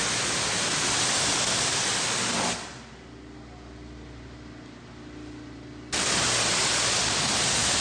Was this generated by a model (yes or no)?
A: no